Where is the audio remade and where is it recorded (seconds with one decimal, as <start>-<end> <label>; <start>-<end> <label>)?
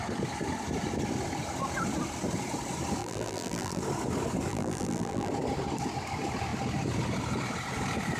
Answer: 0.0-3.0 recorded; 3.0-3.8 remade; 3.8-4.5 recorded; 4.5-5.3 remade; 5.3-8.2 recorded